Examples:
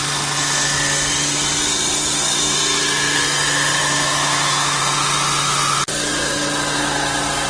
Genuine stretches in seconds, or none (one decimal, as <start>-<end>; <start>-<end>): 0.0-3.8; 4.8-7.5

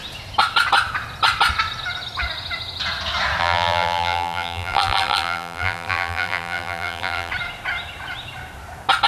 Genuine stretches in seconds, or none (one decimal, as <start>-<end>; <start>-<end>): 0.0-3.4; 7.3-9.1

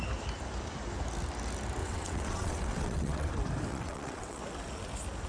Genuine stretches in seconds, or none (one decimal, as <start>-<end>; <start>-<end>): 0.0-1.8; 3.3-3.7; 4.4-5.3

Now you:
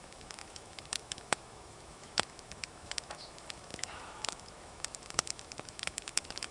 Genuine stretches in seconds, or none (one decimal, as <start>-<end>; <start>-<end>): none